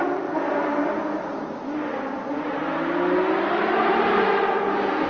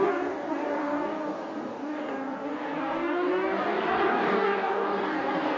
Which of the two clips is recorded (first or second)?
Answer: first